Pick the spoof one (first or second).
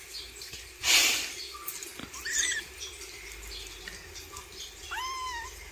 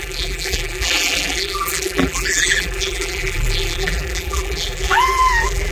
second